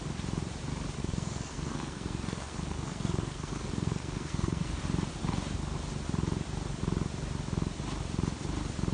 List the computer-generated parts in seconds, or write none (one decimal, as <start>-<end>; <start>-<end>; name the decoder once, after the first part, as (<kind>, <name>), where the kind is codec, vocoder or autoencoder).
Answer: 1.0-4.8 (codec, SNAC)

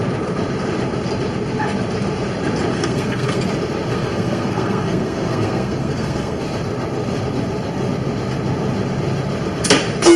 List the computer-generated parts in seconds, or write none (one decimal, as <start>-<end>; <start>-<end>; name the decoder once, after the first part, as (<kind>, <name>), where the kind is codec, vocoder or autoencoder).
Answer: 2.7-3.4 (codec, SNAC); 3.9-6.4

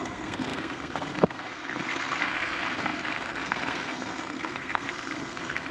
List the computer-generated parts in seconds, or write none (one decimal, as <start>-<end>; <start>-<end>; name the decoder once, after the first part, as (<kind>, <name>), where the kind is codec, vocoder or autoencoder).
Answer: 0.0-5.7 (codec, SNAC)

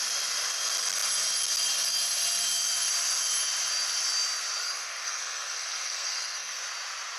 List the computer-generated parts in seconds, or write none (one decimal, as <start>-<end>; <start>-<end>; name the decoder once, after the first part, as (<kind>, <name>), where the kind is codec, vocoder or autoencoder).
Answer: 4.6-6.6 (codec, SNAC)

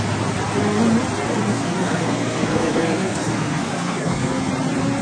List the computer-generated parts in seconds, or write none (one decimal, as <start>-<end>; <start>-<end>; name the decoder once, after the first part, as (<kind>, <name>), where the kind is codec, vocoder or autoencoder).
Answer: 1.5-4.5 (codec, SNAC)